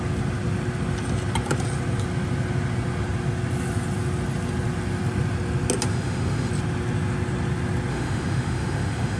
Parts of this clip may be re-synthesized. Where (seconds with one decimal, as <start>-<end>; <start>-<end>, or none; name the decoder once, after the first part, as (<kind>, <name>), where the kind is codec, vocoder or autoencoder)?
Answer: 5.9-6.5 (autoencoder, DAC-VAE); 7.9-9.2